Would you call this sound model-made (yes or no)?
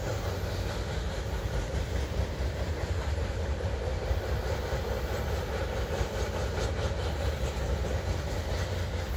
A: no